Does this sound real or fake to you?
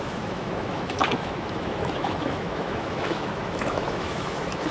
fake